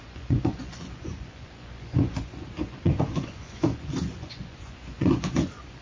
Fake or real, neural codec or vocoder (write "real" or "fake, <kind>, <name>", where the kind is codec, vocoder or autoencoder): fake, vocoder, Vocos